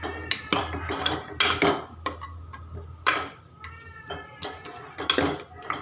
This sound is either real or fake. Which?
real